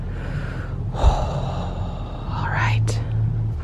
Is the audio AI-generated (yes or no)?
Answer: no